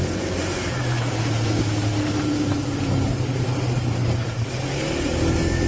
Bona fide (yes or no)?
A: yes